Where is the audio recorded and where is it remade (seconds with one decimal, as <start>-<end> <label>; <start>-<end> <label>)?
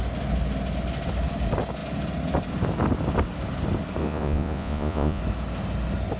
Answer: 0.0-4.0 recorded; 4.0-5.2 remade; 5.2-6.2 recorded